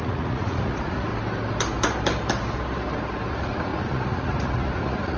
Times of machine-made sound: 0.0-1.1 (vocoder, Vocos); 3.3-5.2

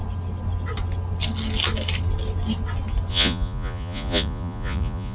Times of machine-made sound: 3.1-5.1 (vocoder, Vocos)

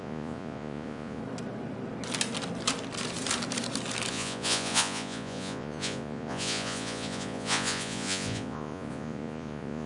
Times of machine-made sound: 0.0-1.2 (vocoder, Vocos); 4.1-9.9

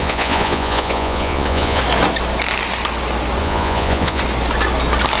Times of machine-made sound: 0.0-1.8 (vocoder, Vocos); 3.4-4.2

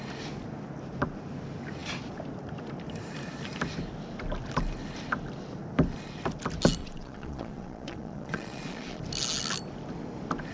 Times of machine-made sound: 6.8-9.0 (vocoder, Vocos)